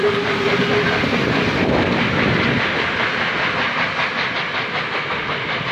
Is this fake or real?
real